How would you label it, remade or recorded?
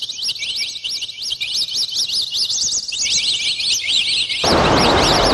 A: recorded